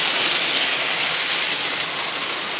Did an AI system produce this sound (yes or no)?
no